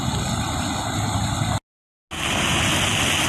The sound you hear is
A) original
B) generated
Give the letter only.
A